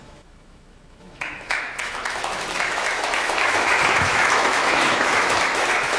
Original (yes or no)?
no